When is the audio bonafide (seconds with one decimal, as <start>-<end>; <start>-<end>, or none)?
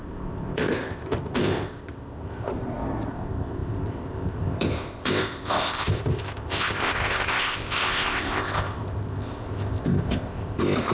2.5-3.1